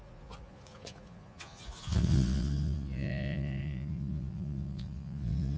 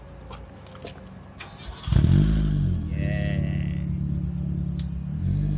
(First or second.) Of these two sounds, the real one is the second